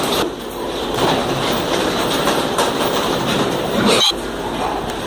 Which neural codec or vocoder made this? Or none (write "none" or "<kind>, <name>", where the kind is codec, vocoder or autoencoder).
vocoder, BigVGAN v2